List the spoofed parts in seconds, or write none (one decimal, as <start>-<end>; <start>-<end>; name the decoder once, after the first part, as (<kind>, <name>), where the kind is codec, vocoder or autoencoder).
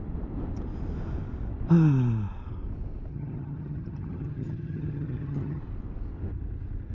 3.1-5.6 (vocoder, HiFi-GAN)